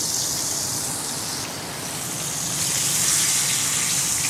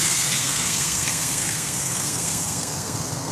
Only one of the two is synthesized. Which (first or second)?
second